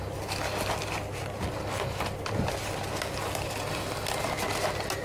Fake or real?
real